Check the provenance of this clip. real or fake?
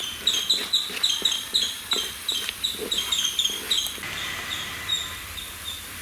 fake